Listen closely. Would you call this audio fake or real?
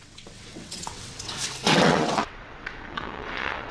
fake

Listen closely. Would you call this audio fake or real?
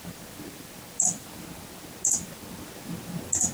real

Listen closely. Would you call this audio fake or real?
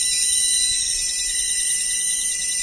fake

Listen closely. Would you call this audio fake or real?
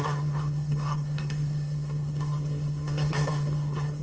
fake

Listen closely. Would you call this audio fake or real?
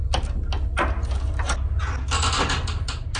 real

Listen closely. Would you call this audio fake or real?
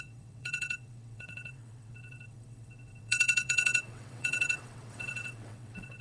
fake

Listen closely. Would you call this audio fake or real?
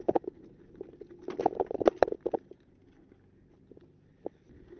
real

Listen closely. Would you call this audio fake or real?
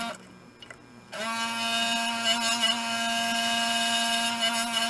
real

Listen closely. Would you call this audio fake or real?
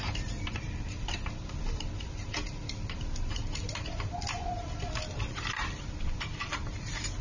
fake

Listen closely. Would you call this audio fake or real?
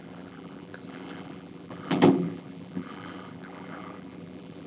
fake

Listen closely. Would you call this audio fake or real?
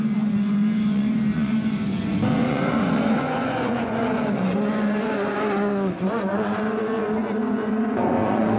fake